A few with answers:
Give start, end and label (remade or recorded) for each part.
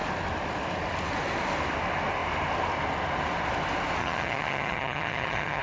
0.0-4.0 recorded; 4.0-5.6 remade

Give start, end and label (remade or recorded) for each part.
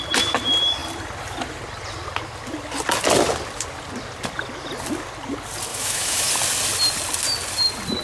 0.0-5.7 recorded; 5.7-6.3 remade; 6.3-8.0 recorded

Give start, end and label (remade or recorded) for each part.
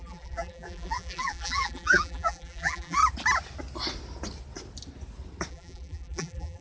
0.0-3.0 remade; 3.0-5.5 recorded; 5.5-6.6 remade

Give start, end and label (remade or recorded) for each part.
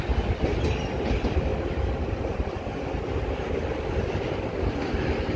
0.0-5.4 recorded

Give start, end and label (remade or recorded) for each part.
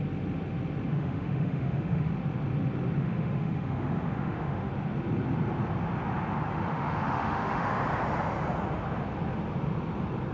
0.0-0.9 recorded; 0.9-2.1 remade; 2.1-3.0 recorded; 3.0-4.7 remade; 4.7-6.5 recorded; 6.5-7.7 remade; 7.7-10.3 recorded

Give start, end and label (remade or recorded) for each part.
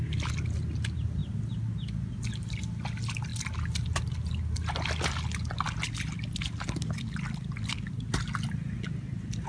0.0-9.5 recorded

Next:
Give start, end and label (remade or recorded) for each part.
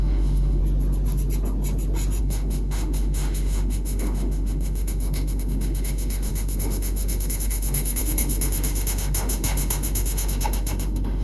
0.0-0.6 remade; 0.6-2.2 recorded; 2.2-11.2 remade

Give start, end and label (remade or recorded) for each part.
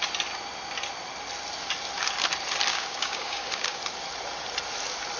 0.0-2.7 recorded; 2.7-3.8 remade; 3.8-5.2 recorded